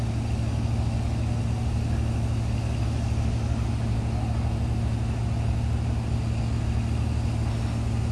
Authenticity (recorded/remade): recorded